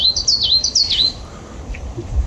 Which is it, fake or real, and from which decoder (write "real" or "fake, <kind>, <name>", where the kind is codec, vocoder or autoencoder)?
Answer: real